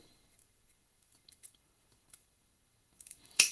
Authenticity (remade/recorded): remade